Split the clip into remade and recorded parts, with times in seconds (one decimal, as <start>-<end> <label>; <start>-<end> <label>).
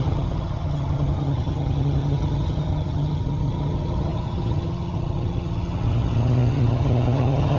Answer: 0.0-7.6 remade